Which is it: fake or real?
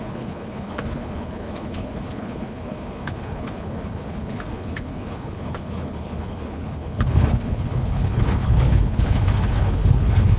fake